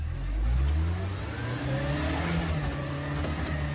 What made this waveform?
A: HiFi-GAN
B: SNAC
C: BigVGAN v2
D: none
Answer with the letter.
D